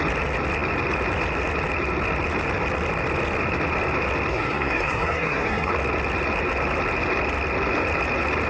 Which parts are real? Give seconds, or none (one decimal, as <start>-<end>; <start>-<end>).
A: 0.0-4.3; 5.7-8.5